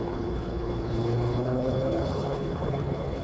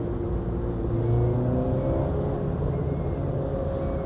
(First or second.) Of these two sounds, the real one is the second